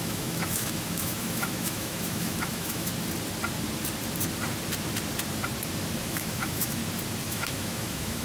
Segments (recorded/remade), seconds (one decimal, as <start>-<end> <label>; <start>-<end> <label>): 0.0-2.9 remade; 2.9-6.0 recorded; 6.0-6.8 remade; 6.8-7.3 recorded; 7.3-8.2 remade

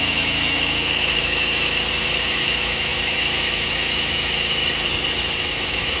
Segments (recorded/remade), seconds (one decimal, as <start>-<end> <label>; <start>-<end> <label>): 0.0-4.6 remade; 4.6-5.4 recorded; 5.4-6.0 remade

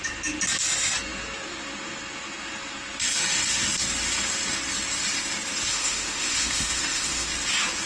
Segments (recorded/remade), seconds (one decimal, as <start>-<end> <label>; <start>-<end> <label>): 0.0-5.7 recorded; 5.7-7.3 remade; 7.3-7.9 recorded

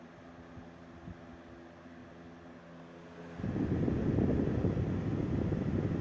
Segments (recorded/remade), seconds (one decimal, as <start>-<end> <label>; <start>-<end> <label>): 0.0-6.0 recorded